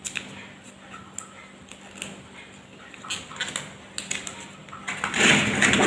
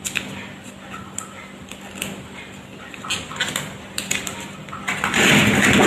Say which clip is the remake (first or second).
second